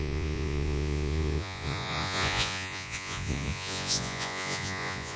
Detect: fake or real fake